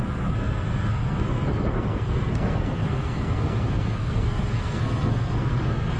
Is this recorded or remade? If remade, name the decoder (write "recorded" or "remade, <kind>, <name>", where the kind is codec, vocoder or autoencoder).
remade, codec, SNAC